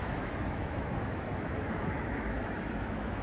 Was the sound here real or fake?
fake